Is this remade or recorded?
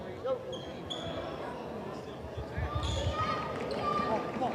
recorded